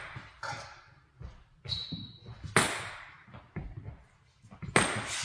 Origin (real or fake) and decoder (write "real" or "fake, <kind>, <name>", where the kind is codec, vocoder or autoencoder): real